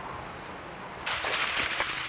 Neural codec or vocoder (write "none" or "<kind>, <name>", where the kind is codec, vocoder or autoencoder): none